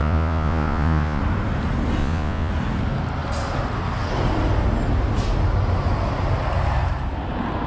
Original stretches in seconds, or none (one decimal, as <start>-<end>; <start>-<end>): 1.2-2.0; 2.5-7.7